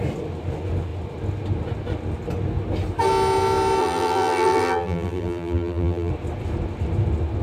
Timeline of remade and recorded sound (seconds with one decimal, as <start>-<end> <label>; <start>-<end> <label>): 0.0-3.8 recorded; 3.8-6.1 remade; 6.1-7.4 recorded